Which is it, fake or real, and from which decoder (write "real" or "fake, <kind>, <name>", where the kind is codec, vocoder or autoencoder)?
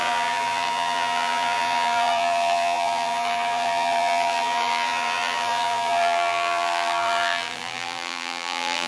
fake, vocoder, BigVGAN v2